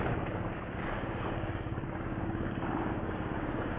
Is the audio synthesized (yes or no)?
yes